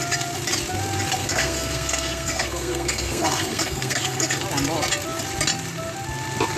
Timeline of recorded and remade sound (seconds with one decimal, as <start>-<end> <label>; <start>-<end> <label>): 0.0-1.2 recorded; 1.2-4.4 remade; 4.4-6.6 recorded